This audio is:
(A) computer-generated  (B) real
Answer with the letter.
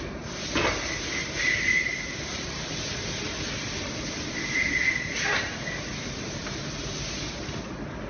B